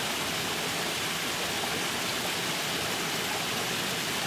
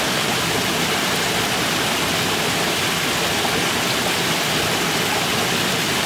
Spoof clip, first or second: first